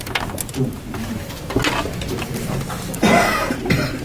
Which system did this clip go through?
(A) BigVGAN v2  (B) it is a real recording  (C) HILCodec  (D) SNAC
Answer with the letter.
B